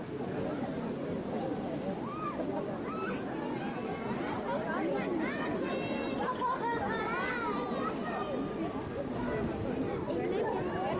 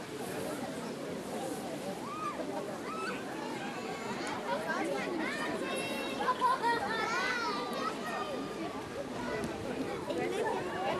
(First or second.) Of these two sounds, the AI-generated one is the second